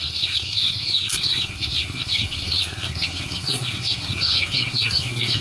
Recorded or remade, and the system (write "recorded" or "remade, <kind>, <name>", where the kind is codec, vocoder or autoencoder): remade, codec, SNAC